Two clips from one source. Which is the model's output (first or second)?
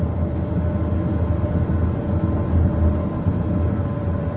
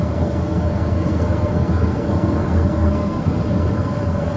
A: second